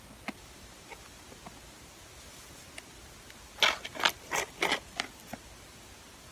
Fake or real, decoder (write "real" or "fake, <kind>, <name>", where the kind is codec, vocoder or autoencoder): real